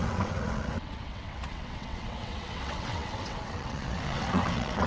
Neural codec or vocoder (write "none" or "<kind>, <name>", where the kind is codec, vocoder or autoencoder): vocoder, WaveNeXt